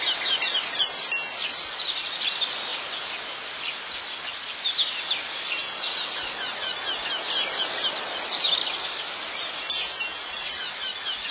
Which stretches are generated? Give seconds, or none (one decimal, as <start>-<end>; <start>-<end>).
none